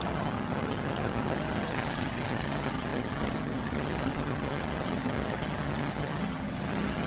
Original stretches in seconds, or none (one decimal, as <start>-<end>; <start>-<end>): none